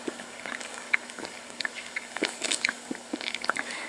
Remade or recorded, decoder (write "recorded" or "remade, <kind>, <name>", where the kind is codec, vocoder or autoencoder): remade, codec, DAC